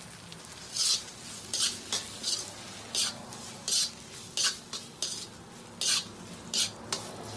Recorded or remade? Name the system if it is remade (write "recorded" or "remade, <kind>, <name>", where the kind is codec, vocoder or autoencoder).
recorded